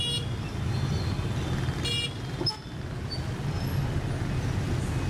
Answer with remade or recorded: recorded